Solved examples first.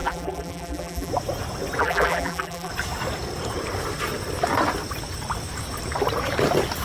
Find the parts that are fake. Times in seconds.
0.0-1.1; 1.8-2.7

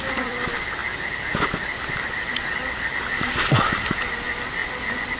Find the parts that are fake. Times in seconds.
none

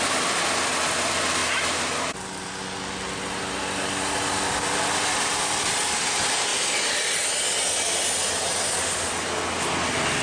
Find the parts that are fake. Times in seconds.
none

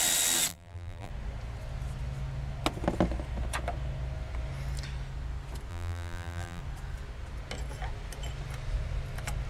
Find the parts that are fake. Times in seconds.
0.5-1.1; 5.7-6.6

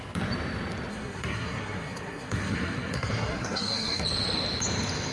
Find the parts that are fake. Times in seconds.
0.9-4.0

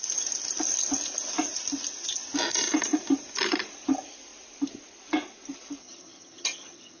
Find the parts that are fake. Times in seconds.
5.8-7.0

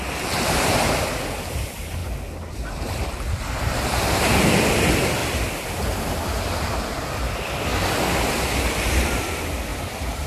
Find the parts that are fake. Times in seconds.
0.0-2.0; 3.6-5.2; 6.6-7.7; 8.3-10.3